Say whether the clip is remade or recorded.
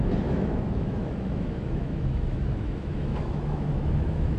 remade